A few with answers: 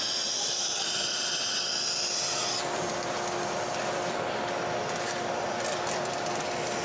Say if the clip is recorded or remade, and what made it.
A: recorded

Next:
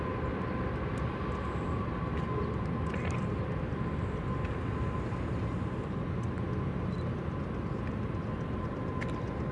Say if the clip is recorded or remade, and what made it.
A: recorded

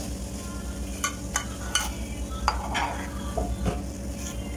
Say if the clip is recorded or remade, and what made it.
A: recorded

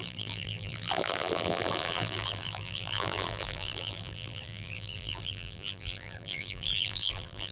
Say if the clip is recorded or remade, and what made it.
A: remade, vocoder, BigVGAN v2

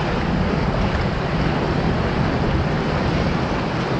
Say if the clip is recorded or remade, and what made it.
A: remade, vocoder, BigVGAN v2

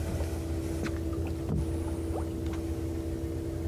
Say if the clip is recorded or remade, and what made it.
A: recorded